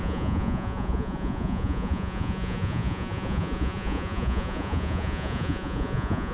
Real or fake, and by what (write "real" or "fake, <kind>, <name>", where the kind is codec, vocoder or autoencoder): fake, vocoder, Vocos